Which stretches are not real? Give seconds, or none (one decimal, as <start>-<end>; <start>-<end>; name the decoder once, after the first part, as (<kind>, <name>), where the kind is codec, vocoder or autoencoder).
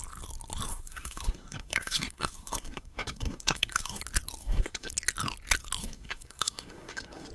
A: 0.7-4.0 (codec, SNAC); 4.4-4.9; 5.8-7.3